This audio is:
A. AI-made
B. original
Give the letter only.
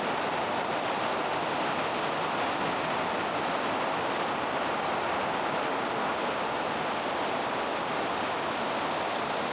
B